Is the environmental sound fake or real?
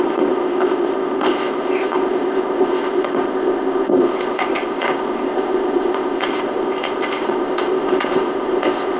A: fake